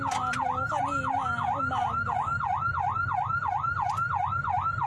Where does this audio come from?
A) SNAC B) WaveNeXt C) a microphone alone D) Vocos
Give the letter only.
C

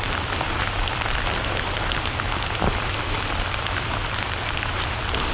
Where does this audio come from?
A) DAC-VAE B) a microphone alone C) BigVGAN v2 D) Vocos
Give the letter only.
C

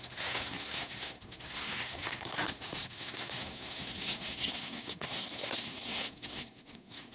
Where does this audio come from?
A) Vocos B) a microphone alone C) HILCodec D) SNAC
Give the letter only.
D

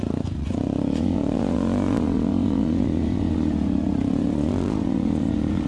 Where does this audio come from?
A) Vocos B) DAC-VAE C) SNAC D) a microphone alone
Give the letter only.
A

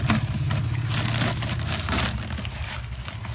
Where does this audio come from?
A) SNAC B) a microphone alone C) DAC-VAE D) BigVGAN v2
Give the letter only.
B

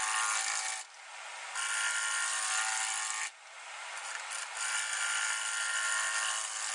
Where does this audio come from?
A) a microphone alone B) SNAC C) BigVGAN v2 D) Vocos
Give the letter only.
A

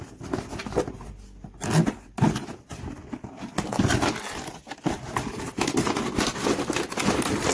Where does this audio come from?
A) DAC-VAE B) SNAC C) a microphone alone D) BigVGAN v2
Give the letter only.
C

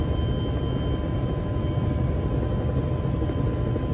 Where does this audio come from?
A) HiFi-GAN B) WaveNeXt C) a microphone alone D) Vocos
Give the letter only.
C